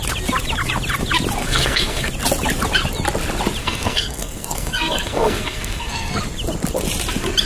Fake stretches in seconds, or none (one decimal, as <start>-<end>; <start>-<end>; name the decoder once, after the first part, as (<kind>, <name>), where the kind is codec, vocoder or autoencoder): 1.4-2.1 (codec, SNAC); 3.6-6.2

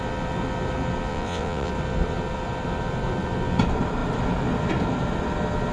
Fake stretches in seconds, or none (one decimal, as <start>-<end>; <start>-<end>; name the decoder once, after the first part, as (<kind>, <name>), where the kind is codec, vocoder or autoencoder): 1.1-1.7 (vocoder, WaveNeXt)

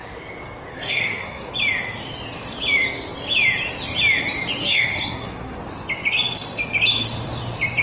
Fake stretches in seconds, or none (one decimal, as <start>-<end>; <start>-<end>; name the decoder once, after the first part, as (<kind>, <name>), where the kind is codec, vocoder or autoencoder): 0.7-1.5 (codec, SNAC); 4.6-5.6

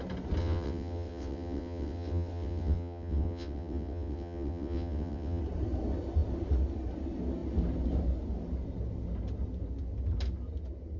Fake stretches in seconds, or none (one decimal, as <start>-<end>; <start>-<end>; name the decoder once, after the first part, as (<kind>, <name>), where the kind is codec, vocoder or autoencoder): 0.4-5.4 (vocoder, WaveNeXt)

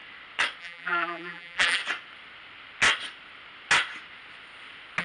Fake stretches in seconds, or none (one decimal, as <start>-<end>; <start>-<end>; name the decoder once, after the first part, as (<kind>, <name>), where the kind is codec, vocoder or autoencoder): 0.6-1.8 (vocoder, BigVGAN v2)

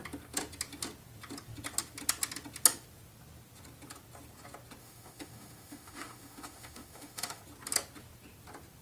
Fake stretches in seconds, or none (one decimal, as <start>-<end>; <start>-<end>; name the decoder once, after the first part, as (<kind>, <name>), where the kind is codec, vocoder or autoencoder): 4.8-7.4 (autoencoder, DAC-VAE)